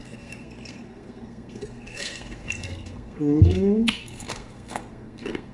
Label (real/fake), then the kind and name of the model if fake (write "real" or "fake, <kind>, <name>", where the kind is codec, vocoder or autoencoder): fake, codec, SNAC